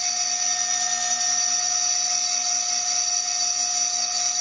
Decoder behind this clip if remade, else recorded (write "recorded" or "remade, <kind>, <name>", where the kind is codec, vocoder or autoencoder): recorded